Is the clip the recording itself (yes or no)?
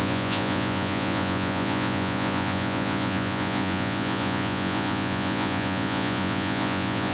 no